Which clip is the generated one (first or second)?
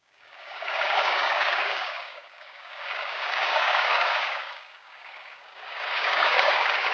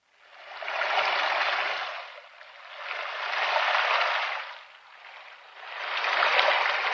first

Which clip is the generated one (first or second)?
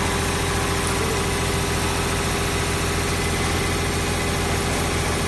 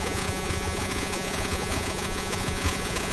second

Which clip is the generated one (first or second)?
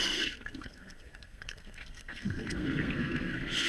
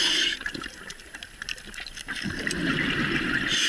first